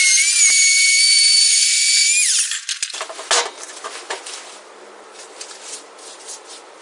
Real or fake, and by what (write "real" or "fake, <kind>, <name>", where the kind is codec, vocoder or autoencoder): real